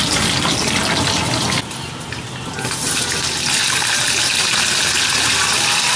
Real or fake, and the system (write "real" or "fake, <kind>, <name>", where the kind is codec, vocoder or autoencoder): real